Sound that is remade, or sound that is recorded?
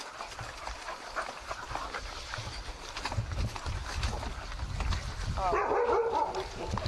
recorded